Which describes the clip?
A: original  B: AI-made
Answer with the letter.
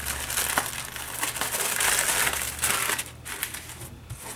A